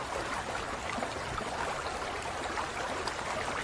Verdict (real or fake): real